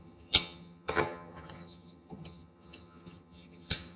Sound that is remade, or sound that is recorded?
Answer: remade